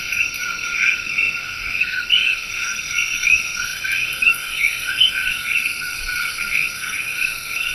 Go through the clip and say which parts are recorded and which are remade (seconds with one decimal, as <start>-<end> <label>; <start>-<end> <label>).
0.0-7.7 remade